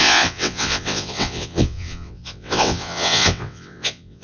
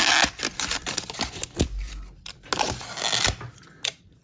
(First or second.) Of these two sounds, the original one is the second